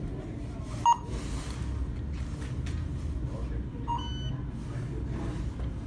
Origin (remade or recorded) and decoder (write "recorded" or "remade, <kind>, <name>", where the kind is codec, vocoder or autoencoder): recorded